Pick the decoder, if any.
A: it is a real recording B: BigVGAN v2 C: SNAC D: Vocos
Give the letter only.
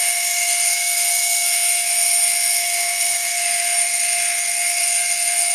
C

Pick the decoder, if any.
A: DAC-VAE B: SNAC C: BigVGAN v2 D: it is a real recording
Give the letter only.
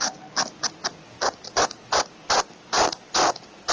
D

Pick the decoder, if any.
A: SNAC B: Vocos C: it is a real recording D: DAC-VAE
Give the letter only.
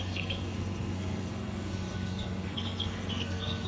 A